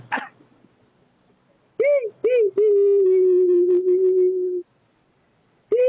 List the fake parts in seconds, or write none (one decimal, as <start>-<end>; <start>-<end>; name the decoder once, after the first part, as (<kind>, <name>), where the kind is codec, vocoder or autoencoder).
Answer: none